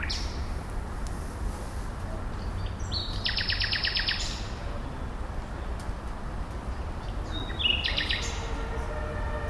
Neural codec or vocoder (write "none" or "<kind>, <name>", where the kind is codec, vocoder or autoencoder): none